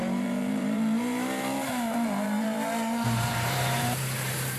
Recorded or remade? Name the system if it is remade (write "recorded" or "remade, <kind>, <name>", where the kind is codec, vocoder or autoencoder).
remade, vocoder, BigVGAN v2